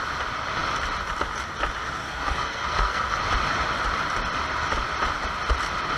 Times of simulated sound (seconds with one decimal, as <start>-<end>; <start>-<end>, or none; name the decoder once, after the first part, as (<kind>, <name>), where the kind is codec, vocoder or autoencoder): 2.0-3.2 (codec, SNAC)